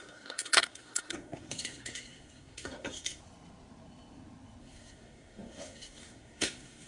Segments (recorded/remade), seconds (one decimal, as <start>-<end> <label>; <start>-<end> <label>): 0.0-3.2 remade; 3.2-4.6 recorded; 4.6-6.9 remade